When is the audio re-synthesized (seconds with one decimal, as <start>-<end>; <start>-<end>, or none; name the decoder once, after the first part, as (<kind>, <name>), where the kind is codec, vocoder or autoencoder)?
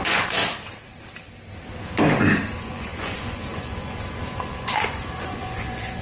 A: 0.0-0.4 (vocoder, Vocos); 2.6-6.0